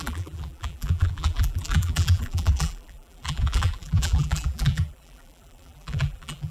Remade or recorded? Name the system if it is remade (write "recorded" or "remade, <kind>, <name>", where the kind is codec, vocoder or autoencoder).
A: remade, vocoder, BigVGAN v2